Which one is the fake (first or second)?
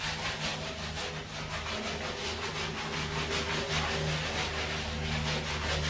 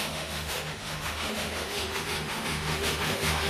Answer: second